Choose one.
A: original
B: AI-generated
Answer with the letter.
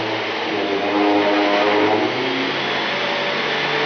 A